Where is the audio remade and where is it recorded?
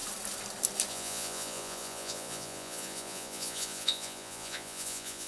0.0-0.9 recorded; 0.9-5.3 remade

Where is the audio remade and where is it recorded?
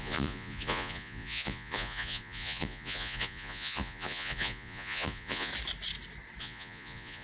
0.0-5.5 remade; 5.5-6.4 recorded; 6.4-7.2 remade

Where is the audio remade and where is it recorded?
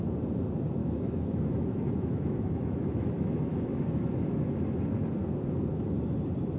0.0-0.8 recorded; 0.8-4.8 remade; 4.8-6.6 recorded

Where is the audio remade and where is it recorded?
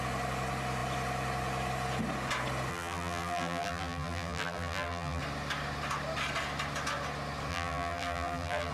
0.0-2.7 recorded; 2.7-5.2 remade; 5.2-7.5 recorded; 7.5-8.7 remade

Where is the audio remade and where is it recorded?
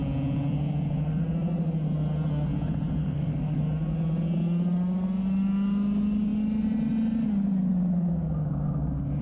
0.0-3.0 recorded; 3.0-3.6 remade; 3.6-9.2 recorded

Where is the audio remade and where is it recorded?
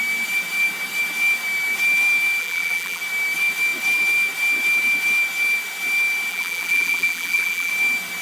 0.0-2.4 recorded; 2.4-3.0 remade; 3.0-6.3 recorded; 6.3-7.7 remade; 7.7-8.2 recorded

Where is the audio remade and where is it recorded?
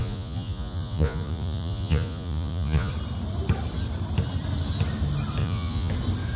0.0-2.9 remade; 2.9-5.4 recorded; 5.4-5.9 remade; 5.9-6.4 recorded